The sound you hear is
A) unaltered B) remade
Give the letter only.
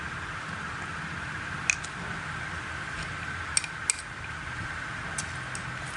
A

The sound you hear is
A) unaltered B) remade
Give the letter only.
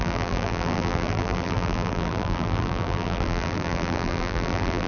B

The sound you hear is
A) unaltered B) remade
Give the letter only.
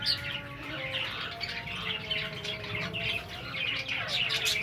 A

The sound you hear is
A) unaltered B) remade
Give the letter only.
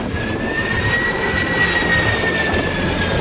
A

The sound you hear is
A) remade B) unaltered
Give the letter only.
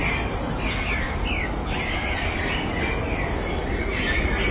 B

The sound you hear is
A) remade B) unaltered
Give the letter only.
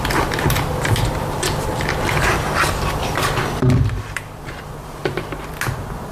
A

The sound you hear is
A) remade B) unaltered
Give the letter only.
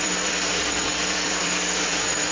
A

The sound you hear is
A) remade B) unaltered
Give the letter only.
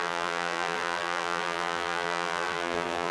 A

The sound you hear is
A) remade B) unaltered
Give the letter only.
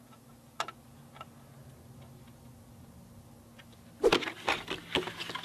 B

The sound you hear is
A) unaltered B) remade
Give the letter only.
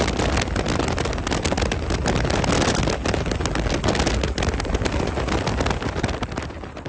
A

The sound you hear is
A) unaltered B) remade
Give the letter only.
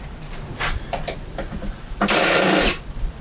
B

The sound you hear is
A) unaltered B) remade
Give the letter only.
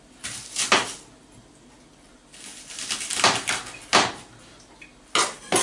A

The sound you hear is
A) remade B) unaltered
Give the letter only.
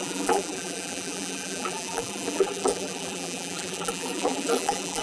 A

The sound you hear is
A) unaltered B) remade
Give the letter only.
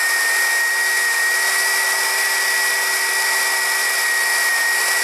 A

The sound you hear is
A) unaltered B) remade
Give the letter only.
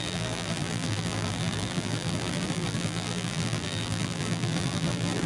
B